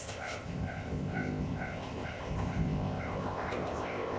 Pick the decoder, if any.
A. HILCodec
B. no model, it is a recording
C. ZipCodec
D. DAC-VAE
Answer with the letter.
C